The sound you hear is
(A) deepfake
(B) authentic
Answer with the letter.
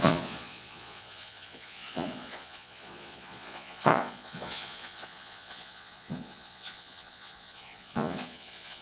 A